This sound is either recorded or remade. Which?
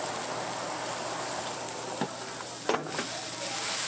recorded